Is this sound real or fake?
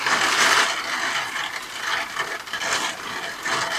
real